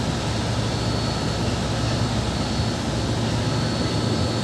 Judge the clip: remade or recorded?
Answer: recorded